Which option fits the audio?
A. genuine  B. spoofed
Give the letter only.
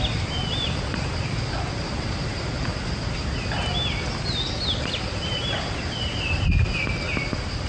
A